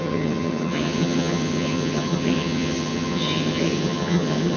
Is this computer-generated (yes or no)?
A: yes